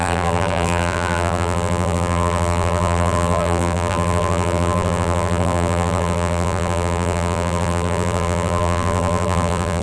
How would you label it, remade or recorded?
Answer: remade